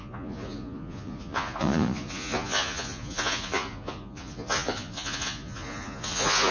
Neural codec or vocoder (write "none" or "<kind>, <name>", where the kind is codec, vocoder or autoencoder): vocoder, Vocos